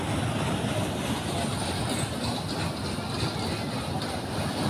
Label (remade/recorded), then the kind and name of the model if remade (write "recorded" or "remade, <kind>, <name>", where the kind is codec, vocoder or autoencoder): recorded